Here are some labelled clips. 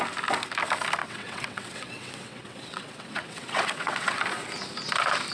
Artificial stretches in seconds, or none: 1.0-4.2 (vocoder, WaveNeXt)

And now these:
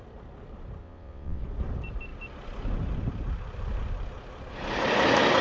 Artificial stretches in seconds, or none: 0.8-1.4 (vocoder, WaveNeXt)